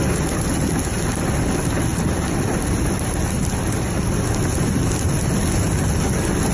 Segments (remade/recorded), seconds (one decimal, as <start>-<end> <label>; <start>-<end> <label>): 0.0-1.9 recorded; 1.9-4.2 remade; 4.2-6.5 recorded